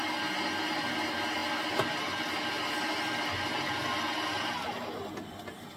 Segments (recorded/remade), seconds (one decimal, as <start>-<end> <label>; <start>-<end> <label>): 0.0-5.8 recorded